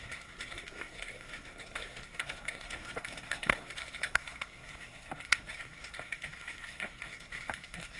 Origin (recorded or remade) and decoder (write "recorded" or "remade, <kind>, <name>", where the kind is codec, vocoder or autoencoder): remade, codec, SNAC